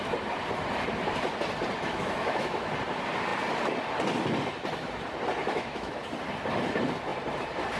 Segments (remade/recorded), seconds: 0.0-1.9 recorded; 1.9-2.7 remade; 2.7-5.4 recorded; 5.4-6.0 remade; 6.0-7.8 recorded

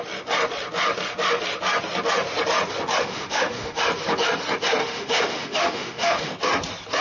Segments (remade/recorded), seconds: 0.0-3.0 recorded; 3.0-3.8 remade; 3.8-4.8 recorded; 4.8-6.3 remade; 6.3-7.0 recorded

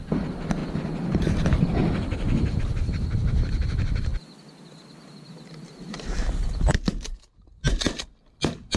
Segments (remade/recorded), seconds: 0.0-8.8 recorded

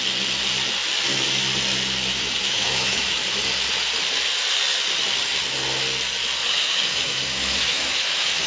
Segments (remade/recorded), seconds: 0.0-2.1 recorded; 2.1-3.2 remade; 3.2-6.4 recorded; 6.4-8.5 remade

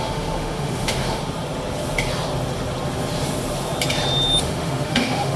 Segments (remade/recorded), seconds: 0.0-1.2 remade; 1.2-4.4 recorded; 4.4-5.4 remade

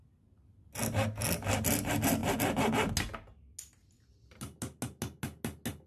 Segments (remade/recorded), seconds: 0.0-5.9 recorded

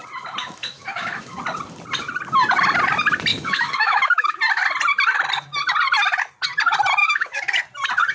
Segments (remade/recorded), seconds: 0.0-0.4 recorded; 0.4-1.4 remade; 1.4-3.3 recorded; 3.3-4.4 remade; 4.4-7.0 recorded; 7.0-7.6 remade; 7.6-8.1 recorded

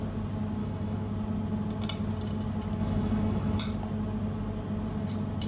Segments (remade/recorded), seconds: 0.0-0.6 recorded; 0.6-1.1 remade; 1.1-2.8 recorded; 2.8-3.6 remade; 3.6-5.5 recorded